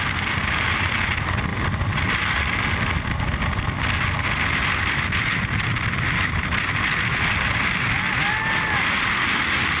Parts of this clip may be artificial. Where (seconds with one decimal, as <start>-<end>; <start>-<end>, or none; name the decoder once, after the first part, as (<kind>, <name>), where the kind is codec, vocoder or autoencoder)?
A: none